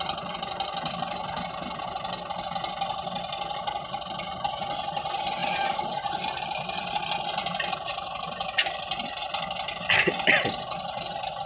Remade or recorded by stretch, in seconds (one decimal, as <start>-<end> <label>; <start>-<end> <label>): 0.0-5.4 recorded; 5.4-7.0 remade; 7.0-11.5 recorded